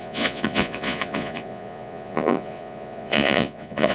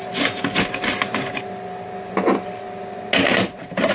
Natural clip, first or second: second